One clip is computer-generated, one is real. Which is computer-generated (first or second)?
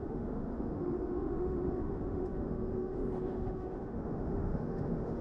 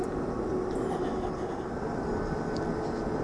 first